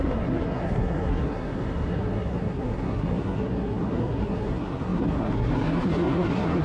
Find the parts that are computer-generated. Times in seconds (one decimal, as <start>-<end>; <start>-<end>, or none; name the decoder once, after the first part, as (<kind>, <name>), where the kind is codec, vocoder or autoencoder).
0.0-6.6 (codec, SNAC)